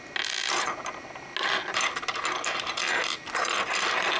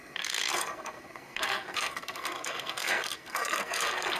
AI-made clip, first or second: second